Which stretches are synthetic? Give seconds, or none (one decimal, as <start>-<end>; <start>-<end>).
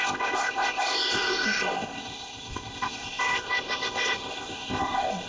0.0-5.3